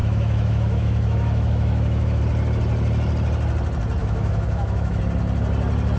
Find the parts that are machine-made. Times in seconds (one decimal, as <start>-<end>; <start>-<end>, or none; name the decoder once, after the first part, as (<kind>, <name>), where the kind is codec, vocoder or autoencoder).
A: 0.0-2.2 (autoencoder, DAC-VAE); 4.0-5.0